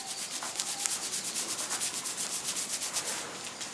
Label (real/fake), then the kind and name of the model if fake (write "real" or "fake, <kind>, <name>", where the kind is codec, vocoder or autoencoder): real